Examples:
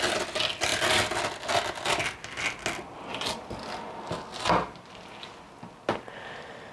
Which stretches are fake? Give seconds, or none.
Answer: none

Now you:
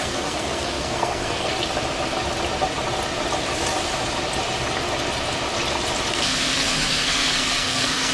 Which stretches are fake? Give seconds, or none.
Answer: 0.0-1.5 (codec, SNAC); 6.1-8.1

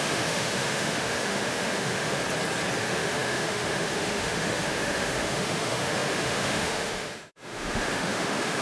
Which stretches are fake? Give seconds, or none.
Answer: 0.0-2.2 (autoencoder, DAC-VAE); 2.8-8.6